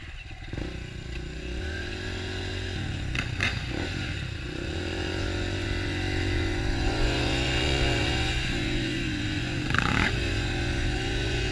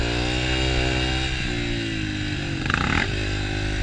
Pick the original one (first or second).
second